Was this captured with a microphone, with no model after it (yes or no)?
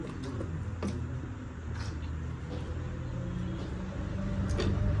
yes